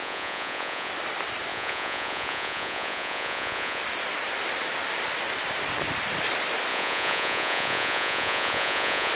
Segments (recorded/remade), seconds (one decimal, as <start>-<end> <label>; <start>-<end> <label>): 0.0-0.9 remade; 0.9-1.5 recorded; 1.5-3.8 remade; 3.8-6.7 recorded; 6.7-9.1 remade